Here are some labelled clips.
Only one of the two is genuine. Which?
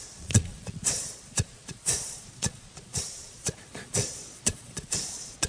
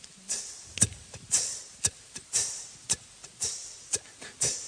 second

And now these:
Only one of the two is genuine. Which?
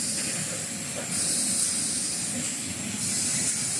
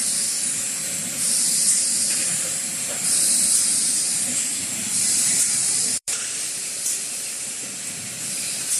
first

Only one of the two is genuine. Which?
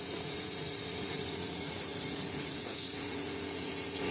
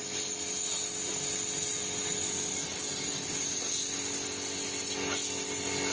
second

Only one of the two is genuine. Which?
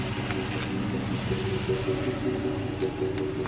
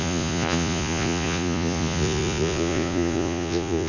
first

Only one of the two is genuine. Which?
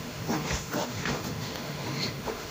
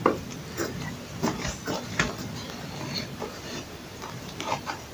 second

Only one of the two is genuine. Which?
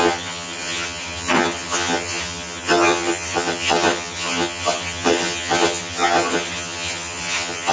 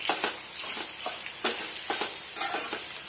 second